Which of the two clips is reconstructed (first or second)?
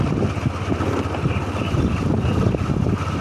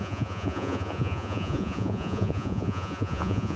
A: second